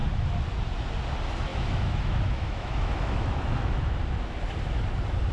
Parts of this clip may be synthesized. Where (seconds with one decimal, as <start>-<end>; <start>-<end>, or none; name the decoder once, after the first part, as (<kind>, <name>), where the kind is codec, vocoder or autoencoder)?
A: 1.5-4.0 (autoencoder, DAC-VAE)